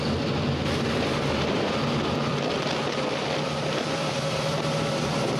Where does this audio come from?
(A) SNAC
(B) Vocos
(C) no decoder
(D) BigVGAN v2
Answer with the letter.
D